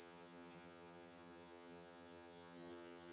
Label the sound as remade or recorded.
remade